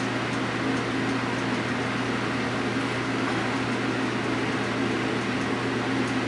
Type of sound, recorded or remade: recorded